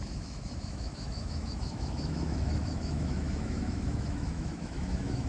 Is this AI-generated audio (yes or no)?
yes